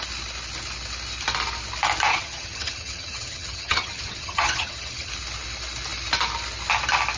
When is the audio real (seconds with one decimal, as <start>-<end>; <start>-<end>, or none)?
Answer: 0.0-2.1; 5.1-7.2